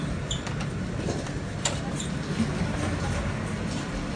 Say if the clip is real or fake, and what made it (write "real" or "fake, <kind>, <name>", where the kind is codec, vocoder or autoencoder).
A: real